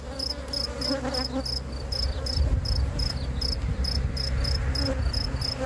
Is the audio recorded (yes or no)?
yes